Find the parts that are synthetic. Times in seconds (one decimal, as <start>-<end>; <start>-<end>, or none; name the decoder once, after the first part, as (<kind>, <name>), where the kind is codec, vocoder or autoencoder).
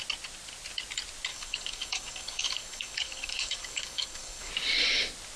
1.3-4.5 (codec, DAC)